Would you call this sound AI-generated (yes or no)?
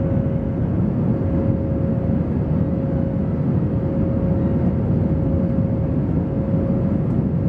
no